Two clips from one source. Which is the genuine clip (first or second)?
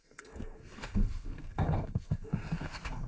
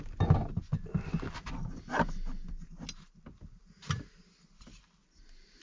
second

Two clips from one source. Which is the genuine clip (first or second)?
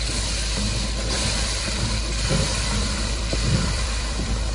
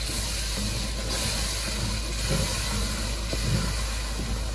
second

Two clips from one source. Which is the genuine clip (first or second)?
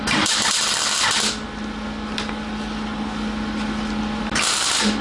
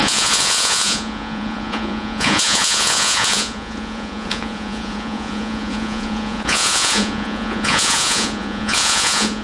first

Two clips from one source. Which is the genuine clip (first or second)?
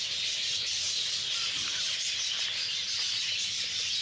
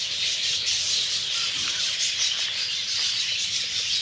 first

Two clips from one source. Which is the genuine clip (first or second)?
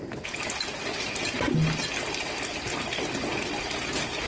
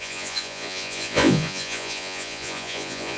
first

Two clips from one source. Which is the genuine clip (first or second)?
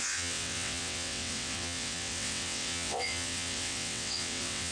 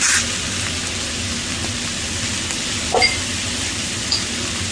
second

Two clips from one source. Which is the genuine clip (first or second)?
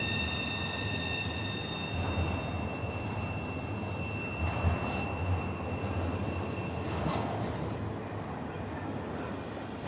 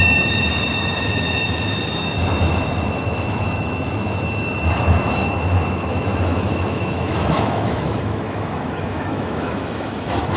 first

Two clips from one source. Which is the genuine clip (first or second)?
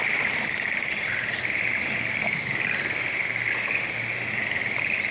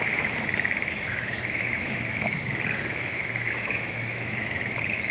first